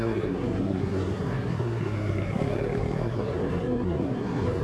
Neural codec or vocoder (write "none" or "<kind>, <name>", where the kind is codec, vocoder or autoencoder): codec, SNAC